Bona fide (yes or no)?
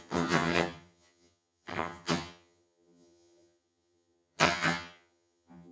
no